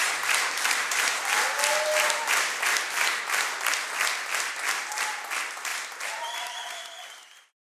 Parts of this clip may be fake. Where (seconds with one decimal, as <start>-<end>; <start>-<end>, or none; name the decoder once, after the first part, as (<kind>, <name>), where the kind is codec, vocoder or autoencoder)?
0.0-1.2 (vocoder, BigVGAN v2); 5.7-7.8